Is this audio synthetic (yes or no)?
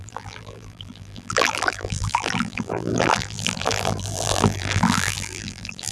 yes